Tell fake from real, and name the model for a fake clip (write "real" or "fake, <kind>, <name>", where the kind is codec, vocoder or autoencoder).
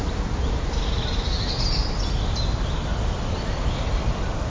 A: real